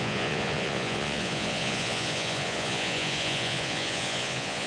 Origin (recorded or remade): remade